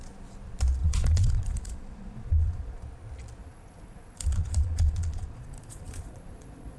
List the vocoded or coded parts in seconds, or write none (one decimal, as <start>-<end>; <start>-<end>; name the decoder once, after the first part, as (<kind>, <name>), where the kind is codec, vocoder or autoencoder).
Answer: 0.8-2.8 (vocoder, Vocos); 3.4-6.8